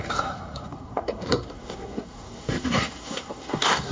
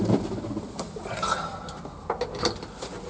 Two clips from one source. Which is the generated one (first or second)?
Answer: first